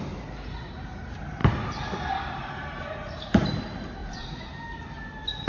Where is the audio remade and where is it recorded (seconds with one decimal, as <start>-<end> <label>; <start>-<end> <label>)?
0.0-4.0 recorded; 4.0-4.5 remade; 4.5-5.5 recorded